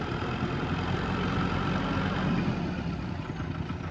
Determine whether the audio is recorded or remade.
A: recorded